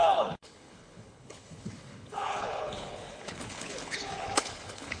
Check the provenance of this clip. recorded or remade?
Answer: remade